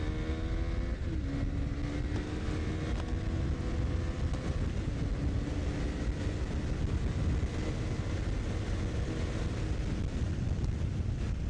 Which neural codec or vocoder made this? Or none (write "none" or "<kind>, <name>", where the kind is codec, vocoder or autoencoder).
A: none